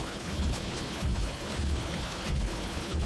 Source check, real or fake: fake